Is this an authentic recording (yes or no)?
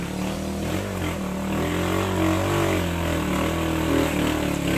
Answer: yes